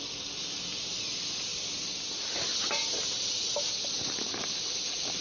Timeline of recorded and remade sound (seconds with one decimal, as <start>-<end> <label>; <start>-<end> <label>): 0.0-1.0 recorded; 1.0-2.8 remade; 2.8-3.8 recorded; 3.8-5.2 remade